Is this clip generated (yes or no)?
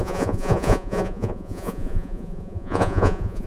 yes